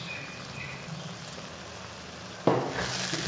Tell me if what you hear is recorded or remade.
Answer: recorded